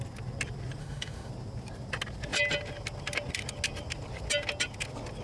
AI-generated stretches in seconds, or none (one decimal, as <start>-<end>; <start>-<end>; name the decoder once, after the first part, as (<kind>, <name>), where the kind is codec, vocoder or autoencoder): 0.8-1.3 (autoencoder, DAC-VAE)